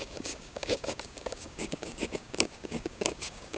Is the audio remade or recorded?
remade